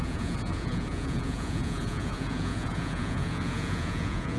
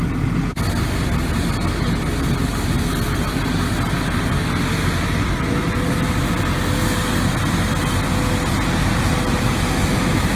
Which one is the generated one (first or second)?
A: first